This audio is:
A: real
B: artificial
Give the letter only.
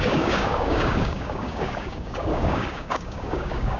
B